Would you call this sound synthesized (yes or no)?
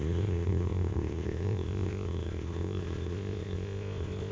yes